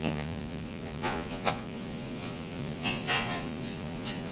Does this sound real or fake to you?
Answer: fake